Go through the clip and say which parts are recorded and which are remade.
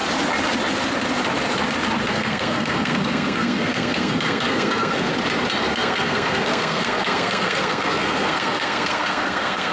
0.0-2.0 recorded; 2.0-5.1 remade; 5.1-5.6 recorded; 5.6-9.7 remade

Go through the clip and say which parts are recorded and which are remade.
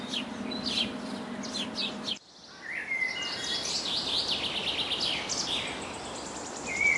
0.0-7.0 recorded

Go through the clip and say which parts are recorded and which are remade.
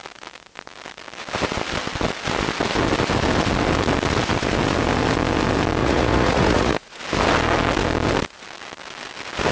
0.0-5.8 recorded; 5.8-7.0 remade; 7.0-9.5 recorded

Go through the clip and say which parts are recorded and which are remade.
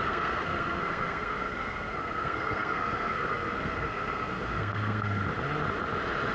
0.0-5.2 remade; 5.2-6.3 recorded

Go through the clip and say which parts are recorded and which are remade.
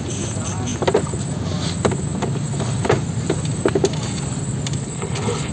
0.0-4.8 recorded; 4.8-5.5 remade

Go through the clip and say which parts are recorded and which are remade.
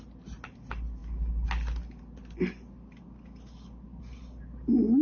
0.0-5.0 recorded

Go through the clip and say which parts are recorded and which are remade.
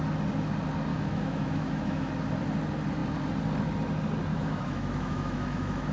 0.0-0.9 recorded; 0.9-2.1 remade; 2.1-4.3 recorded; 4.3-5.9 remade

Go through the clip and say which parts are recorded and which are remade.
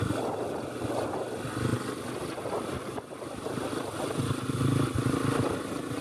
0.0-6.0 recorded